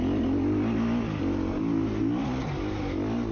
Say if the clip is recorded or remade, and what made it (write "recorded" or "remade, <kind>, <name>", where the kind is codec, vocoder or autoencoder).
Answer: recorded